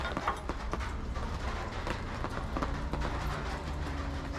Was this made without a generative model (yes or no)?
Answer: no